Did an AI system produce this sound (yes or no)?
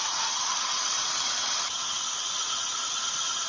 yes